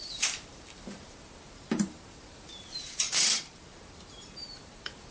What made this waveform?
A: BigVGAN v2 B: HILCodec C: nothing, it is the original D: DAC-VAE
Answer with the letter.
A